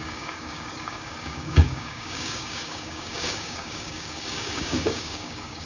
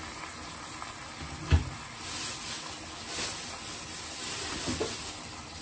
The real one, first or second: second